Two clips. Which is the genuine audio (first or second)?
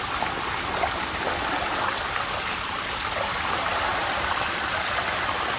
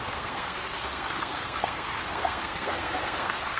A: first